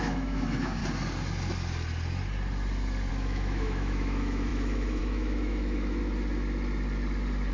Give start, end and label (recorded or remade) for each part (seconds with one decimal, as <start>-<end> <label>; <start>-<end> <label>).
0.0-0.8 remade; 0.8-3.1 recorded; 3.1-6.0 remade; 6.0-7.5 recorded